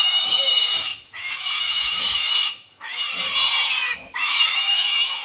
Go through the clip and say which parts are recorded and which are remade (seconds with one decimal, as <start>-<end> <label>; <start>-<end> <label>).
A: 0.0-3.0 remade; 3.0-4.0 recorded; 4.0-5.2 remade